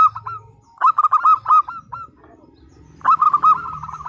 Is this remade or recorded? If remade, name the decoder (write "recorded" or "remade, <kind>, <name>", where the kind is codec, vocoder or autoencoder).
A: recorded